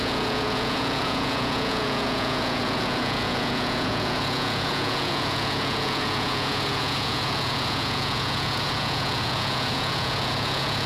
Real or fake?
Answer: fake